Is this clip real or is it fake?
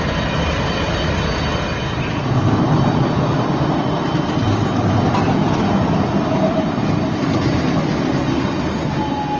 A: real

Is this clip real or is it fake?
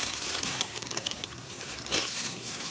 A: fake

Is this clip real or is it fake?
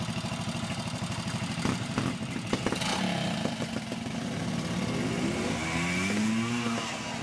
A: real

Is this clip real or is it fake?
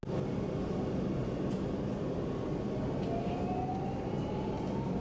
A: real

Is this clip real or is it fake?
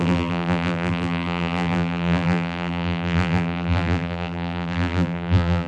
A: fake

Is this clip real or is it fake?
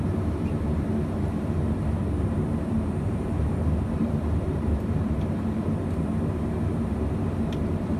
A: fake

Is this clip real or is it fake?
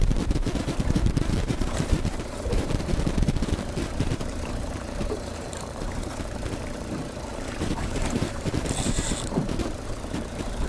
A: fake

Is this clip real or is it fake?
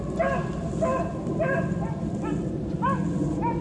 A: real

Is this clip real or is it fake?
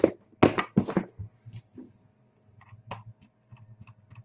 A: real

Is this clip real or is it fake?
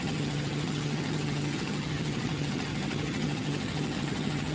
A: fake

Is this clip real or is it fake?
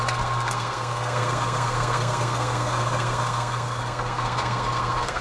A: fake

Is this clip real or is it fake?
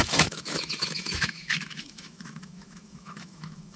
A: fake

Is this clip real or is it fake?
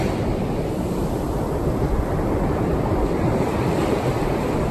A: real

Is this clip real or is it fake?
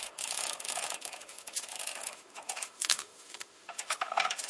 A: fake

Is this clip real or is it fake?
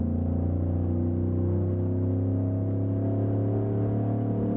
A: real